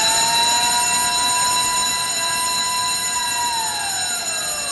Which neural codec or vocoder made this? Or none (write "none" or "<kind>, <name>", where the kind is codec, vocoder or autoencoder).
none